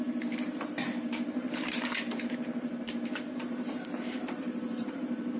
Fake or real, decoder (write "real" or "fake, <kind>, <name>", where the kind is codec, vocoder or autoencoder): fake, vocoder, BigVGAN v2